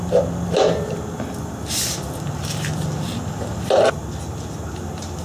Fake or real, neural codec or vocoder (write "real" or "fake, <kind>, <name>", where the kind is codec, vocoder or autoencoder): real